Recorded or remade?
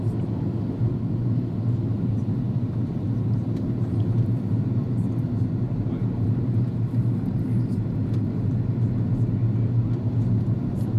recorded